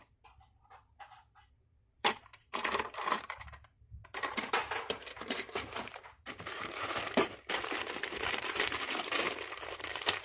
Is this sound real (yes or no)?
no